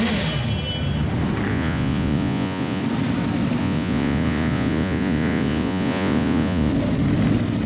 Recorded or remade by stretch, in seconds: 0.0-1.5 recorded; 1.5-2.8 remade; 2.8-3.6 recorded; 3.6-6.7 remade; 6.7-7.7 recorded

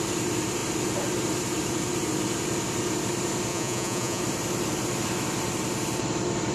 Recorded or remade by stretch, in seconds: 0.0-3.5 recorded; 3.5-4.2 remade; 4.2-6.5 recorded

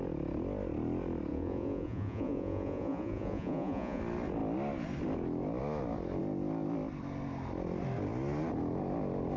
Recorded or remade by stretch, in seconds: 0.0-1.3 recorded; 1.3-4.0 remade; 4.0-9.4 recorded

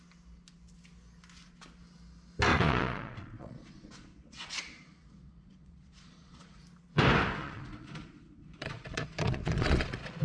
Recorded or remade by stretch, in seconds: 0.0-2.5 recorded; 2.5-6.6 remade; 6.6-7.4 recorded; 7.4-10.2 remade

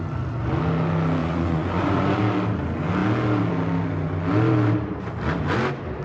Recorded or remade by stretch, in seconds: 0.0-1.2 recorded; 1.2-2.2 remade; 2.2-6.0 recorded

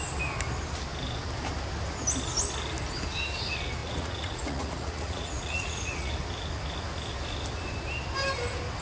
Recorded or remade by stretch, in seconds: 0.0-3.8 recorded; 3.8-6.1 remade; 6.1-8.8 recorded

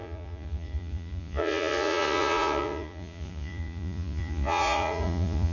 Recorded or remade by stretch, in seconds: 0.0-5.5 remade